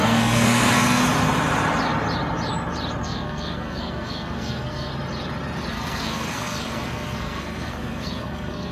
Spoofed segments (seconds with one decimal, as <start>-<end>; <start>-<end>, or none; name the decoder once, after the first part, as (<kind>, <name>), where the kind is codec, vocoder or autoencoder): 0.0-1.0 (codec, SNAC); 3.0-4.9; 5.7-8.7